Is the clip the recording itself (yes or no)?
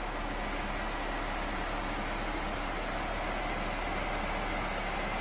yes